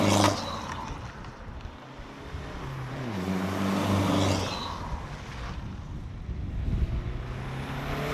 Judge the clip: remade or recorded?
recorded